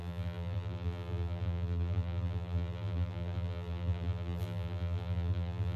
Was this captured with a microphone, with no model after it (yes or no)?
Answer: no